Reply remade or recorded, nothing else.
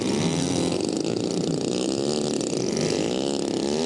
recorded